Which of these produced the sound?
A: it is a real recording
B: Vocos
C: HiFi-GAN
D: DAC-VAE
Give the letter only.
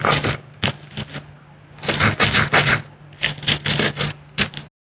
A